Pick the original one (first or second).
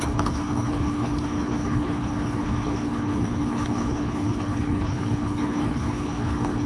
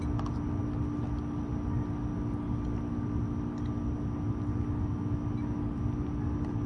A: second